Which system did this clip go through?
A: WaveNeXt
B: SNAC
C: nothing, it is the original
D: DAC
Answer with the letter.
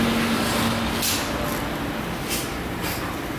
C